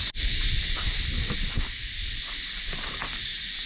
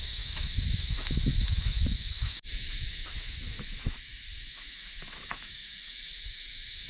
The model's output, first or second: second